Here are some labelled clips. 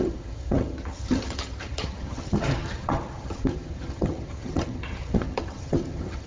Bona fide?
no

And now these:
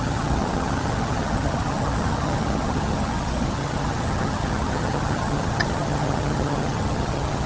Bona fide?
no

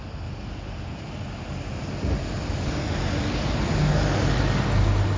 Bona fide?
yes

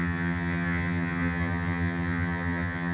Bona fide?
no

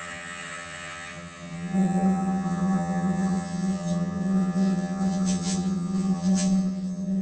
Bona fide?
no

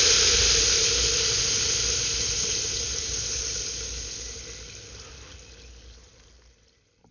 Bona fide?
yes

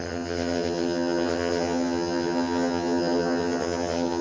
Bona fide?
no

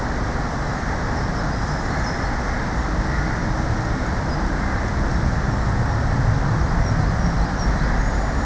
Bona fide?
yes